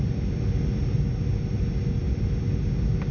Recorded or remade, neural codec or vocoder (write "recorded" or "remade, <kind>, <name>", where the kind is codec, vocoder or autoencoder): recorded